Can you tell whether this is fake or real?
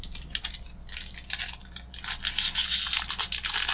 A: real